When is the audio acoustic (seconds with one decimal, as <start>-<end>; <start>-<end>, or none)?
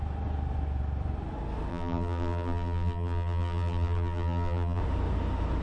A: 0.0-1.7; 4.8-5.6